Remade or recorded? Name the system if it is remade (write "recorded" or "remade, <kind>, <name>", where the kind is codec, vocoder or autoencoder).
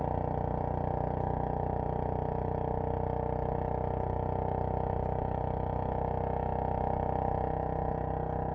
recorded